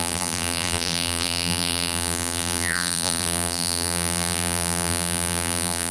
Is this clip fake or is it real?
fake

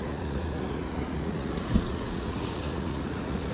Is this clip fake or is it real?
fake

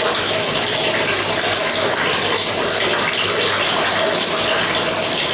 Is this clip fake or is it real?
real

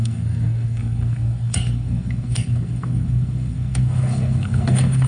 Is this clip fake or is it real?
fake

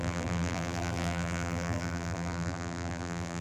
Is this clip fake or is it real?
fake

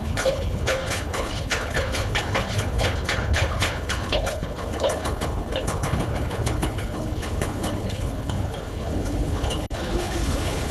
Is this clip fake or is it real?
fake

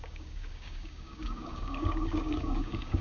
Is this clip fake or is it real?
fake